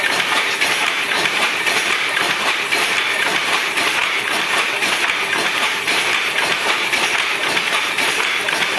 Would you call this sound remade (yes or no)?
yes